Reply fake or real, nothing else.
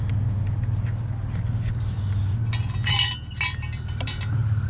real